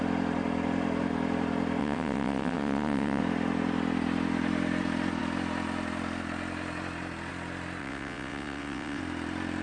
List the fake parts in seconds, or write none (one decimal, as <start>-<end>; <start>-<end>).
1.8-3.2; 7.8-9.0